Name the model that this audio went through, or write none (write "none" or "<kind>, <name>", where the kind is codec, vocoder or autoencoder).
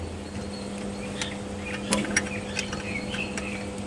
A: none